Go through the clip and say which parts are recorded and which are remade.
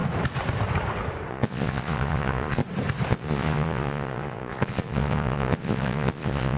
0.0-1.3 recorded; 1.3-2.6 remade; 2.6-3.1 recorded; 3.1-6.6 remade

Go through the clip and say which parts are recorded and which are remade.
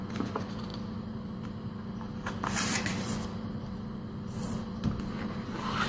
0.0-5.9 recorded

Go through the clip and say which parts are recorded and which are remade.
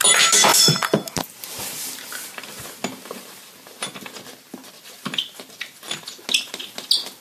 0.0-7.2 recorded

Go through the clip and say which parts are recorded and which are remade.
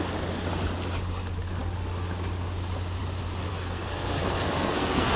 0.0-3.5 recorded; 3.5-5.2 remade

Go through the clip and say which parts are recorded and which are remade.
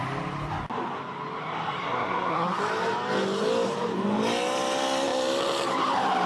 0.0-1.8 recorded; 1.8-2.6 remade; 2.6-6.3 recorded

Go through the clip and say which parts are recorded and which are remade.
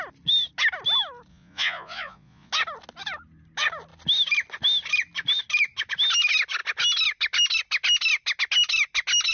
0.0-1.3 recorded; 1.3-2.5 remade; 2.5-9.3 recorded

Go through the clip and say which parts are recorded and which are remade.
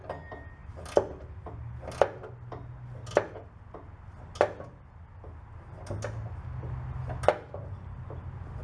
0.0-8.6 recorded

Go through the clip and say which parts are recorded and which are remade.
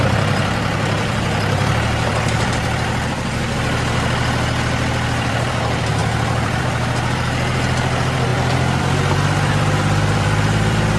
0.0-11.0 remade